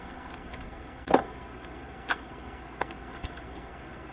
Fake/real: fake